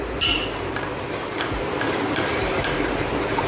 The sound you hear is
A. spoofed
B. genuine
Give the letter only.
A